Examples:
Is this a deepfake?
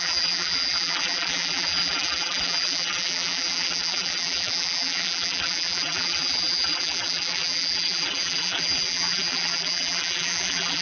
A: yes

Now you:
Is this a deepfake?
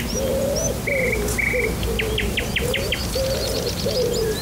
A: no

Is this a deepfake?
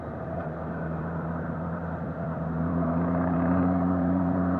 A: yes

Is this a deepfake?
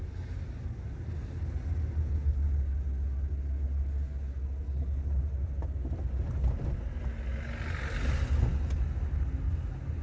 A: no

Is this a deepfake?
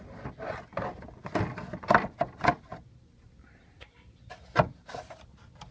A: no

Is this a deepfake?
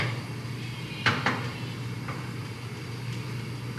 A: no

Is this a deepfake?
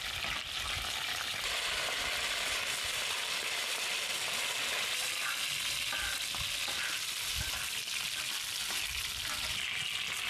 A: no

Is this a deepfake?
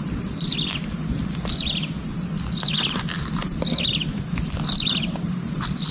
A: yes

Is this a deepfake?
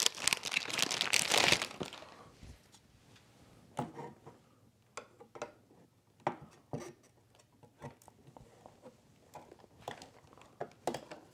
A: no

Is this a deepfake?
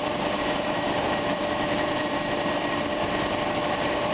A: yes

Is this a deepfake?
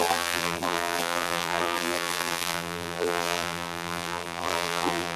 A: yes